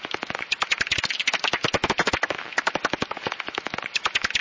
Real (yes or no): no